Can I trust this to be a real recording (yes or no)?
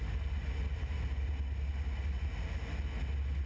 yes